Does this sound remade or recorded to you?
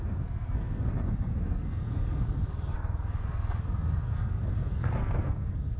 remade